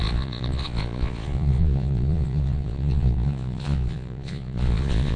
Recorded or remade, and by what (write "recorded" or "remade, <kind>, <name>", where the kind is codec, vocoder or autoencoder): remade, vocoder, Vocos